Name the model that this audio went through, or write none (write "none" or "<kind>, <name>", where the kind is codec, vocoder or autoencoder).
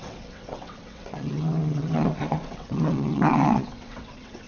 vocoder, WaveNeXt